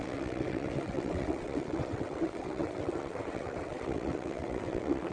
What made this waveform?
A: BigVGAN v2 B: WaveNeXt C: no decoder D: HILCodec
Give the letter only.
B